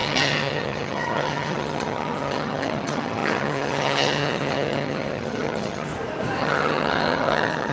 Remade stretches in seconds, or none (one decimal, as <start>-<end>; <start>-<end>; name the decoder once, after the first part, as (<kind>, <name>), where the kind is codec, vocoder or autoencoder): 0.0-5.9 (vocoder, HiFi-GAN); 6.4-7.7